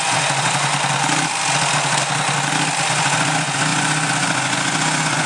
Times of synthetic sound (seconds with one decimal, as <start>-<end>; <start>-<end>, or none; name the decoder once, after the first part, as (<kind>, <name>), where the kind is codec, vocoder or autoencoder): 0.0-0.7 (vocoder, Vocos); 2.9-5.3